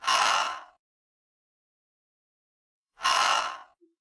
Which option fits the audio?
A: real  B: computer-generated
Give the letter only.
B